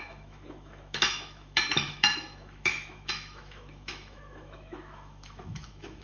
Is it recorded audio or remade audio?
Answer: remade